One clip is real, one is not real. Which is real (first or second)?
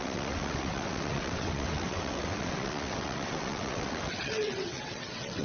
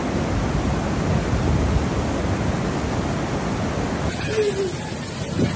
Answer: second